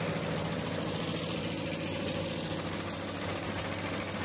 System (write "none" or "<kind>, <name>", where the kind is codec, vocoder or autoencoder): none